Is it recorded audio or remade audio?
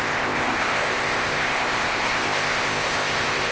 remade